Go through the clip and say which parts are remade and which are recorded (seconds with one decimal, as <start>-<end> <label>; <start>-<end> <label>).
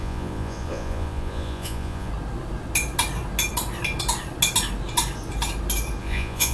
0.0-2.1 remade; 2.1-6.0 recorded; 6.0-6.5 remade